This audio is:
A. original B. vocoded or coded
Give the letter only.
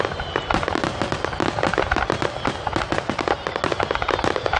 A